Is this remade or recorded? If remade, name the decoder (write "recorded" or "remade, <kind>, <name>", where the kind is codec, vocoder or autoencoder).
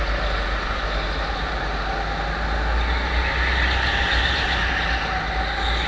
recorded